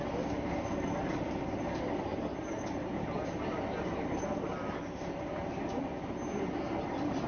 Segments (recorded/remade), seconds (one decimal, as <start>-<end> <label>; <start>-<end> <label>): 0.0-7.3 recorded